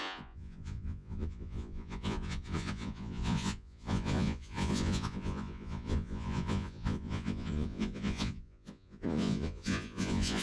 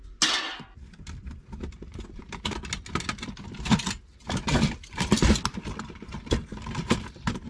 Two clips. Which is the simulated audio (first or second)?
first